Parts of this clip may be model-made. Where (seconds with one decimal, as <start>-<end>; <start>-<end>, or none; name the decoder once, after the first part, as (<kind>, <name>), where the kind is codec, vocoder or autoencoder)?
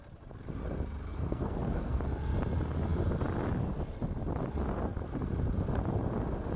1.1-2.0 (codec, SNAC)